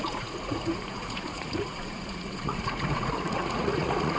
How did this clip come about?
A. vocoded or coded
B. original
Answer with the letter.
A